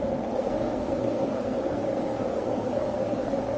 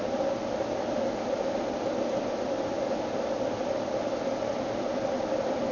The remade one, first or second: first